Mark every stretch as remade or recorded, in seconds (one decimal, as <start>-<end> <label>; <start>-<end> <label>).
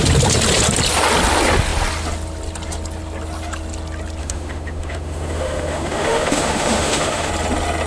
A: 0.0-4.2 recorded; 4.2-7.3 remade; 7.3-7.9 recorded